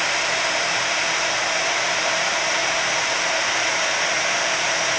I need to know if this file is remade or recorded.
remade